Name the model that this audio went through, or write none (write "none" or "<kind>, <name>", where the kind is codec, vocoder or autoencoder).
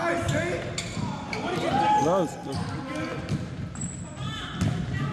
none